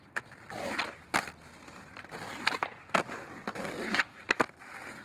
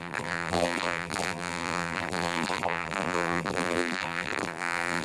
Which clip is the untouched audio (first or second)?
first